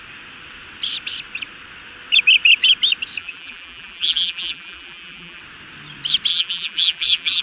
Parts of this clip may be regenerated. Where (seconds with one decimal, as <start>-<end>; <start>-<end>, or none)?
3.2-5.4; 6.3-7.4